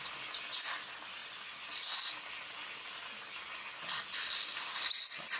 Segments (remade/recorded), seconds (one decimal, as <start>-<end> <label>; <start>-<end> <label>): 0.0-5.4 recorded